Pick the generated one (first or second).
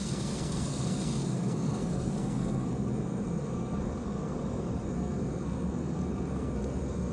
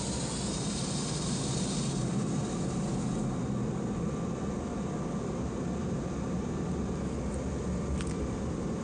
first